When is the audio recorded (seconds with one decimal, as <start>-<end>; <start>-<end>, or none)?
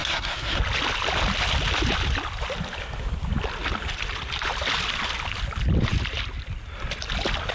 0.6-7.5